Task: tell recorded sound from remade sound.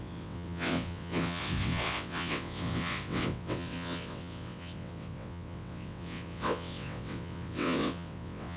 remade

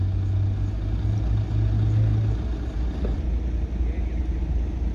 recorded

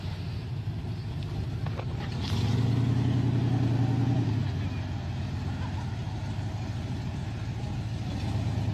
recorded